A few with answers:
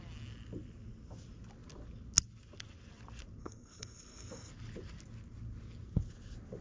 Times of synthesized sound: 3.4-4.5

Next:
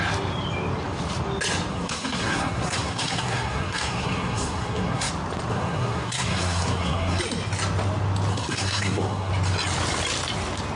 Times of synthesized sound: 1.7-5.1; 5.5-7.2; 8.3-9.3

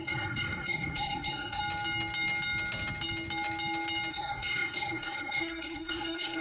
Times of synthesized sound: 0.0-1.6; 4.1-6.4

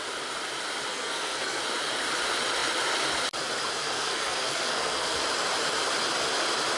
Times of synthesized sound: 0.9-1.6; 3.8-5.2

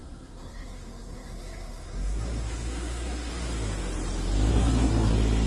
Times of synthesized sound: 0.0-3.3; 4.5-5.1

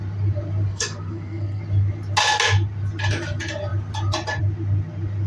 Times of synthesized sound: 0.7-1.6

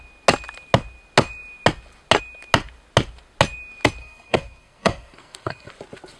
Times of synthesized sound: 4.0-5.7

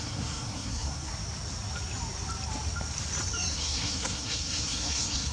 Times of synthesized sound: 0.0-1.1; 3.5-5.3